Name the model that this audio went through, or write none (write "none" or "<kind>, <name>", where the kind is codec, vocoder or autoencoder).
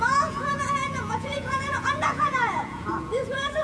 vocoder, Vocos